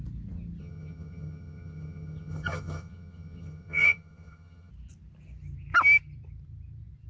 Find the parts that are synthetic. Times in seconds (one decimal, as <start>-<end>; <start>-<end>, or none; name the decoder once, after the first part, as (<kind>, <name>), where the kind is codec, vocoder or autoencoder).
0.6-4.7 (vocoder, HiFi-GAN)